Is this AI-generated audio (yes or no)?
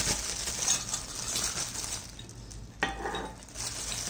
no